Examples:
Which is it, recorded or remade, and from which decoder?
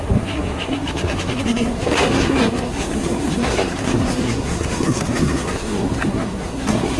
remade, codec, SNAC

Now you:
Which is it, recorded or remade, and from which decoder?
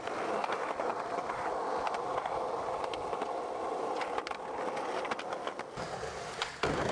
recorded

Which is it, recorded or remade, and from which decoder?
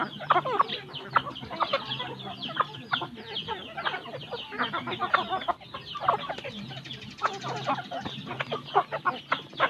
recorded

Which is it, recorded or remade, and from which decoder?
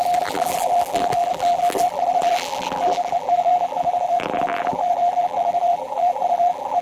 remade, vocoder, BigVGAN v2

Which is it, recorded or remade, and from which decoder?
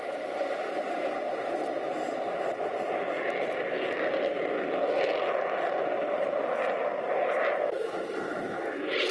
recorded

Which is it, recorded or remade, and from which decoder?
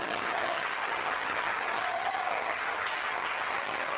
remade, vocoder, HiFi-GAN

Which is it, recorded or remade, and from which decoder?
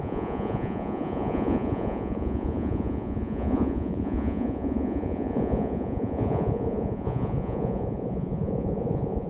remade, vocoder, Vocos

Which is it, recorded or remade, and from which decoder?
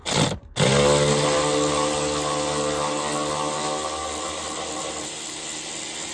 recorded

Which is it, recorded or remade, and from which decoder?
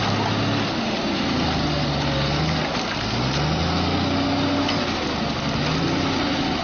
recorded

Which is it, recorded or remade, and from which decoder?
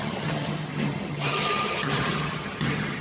remade, vocoder, HiFi-GAN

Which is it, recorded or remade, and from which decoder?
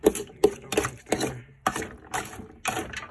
recorded